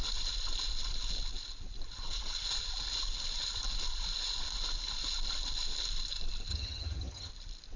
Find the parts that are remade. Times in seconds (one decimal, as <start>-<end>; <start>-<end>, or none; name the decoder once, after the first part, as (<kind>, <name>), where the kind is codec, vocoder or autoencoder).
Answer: 6.5-7.3 (vocoder, HiFi-GAN)